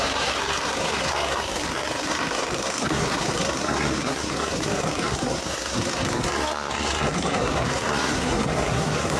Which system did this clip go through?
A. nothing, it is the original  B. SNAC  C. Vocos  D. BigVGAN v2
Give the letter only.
B